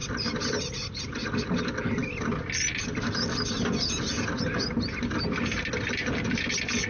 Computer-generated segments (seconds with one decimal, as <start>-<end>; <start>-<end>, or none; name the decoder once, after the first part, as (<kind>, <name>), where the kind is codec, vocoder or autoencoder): none